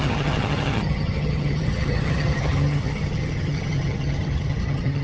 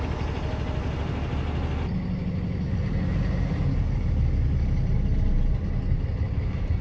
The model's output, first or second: first